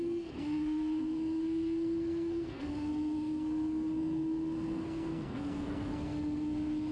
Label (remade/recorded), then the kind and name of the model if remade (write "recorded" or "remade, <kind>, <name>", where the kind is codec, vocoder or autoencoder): remade, codec, SNAC